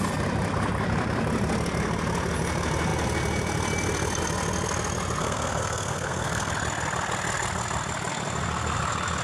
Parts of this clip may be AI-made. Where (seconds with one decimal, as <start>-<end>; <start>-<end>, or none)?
5.2-6.5